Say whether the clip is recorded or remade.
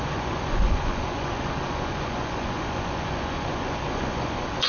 remade